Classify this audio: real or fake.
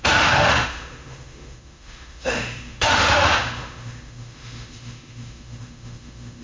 fake